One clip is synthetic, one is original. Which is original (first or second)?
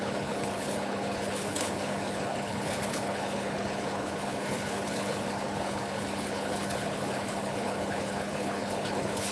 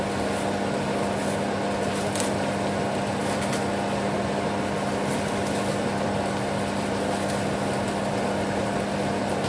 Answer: second